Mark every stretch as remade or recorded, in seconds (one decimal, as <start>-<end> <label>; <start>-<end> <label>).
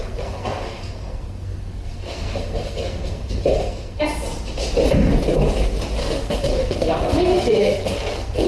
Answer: 0.0-4.0 remade; 4.0-6.0 recorded; 6.0-8.5 remade